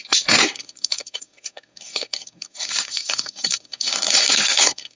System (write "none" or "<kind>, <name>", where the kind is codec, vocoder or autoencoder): codec, SNAC